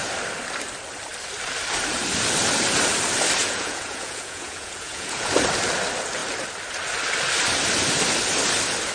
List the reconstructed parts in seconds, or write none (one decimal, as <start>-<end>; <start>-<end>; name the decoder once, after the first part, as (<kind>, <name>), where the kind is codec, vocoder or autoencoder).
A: 3.4-5.3 (vocoder, Vocos)